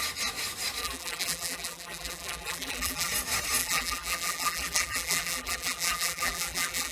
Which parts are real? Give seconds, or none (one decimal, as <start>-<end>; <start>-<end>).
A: 0.0-0.8; 3.1-3.6